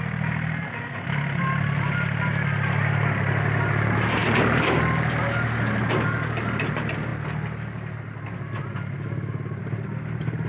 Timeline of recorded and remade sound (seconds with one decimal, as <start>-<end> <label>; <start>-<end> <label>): 0.0-10.5 recorded